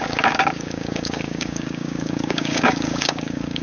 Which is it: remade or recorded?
remade